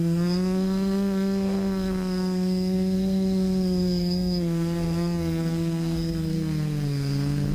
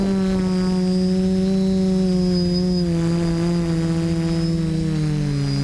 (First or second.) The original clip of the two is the second